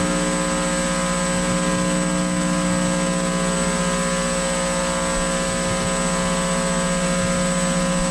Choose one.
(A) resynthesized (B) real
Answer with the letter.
B